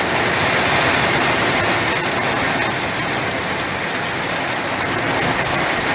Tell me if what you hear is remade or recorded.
recorded